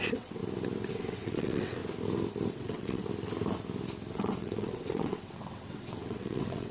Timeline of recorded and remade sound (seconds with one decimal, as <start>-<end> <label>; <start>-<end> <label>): 0.0-0.4 remade; 0.4-0.9 recorded; 0.9-1.8 remade; 1.8-2.5 recorded; 2.5-3.0 remade; 3.0-4.1 recorded; 4.1-6.7 remade